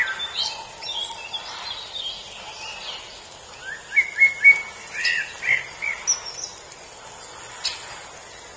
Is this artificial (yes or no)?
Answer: no